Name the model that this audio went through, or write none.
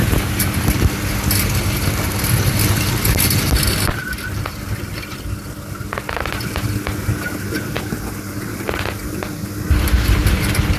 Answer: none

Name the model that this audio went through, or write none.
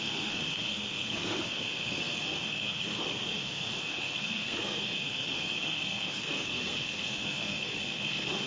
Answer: codec, SNAC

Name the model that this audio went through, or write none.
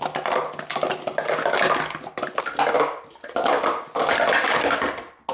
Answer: none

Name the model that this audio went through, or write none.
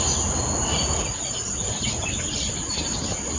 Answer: none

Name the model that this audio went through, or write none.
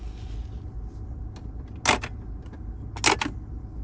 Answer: none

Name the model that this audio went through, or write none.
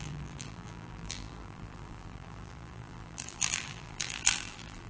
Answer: vocoder, BigVGAN v2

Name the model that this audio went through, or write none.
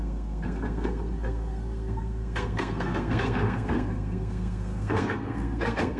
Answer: codec, SNAC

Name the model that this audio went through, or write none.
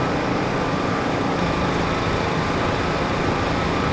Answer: none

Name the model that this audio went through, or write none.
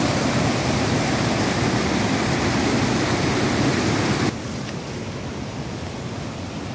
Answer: none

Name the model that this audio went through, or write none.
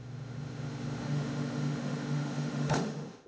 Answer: autoencoder, DAC-VAE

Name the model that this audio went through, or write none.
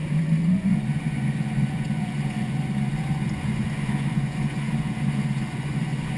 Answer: vocoder, Vocos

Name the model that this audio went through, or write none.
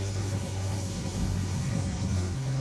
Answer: codec, SNAC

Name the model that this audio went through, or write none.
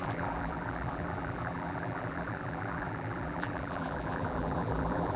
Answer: vocoder, BigVGAN v2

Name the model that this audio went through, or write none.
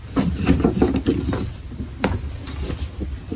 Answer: none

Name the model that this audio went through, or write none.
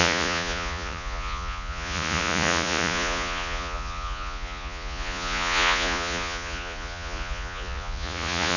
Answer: vocoder, Vocos